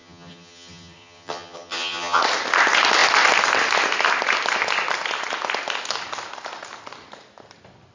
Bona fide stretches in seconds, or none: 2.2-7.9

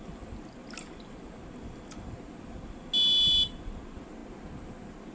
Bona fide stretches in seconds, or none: 0.0-5.1

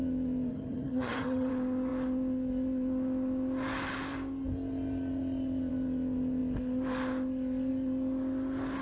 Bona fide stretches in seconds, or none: 0.0-0.5; 1.5-8.8

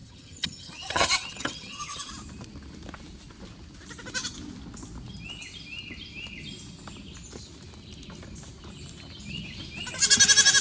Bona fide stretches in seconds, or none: 2.1-10.6